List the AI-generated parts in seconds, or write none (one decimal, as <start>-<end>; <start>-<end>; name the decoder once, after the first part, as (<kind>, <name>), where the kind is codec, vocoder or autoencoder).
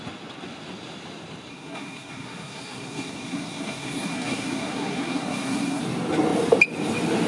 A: 1.5-5.8 (codec, SNAC)